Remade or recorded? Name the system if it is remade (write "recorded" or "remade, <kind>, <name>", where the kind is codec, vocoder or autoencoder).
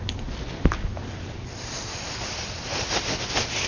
recorded